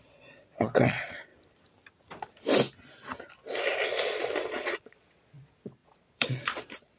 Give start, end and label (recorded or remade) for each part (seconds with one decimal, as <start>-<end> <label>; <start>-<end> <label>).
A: 0.0-1.3 remade; 1.3-4.5 recorded; 4.5-7.0 remade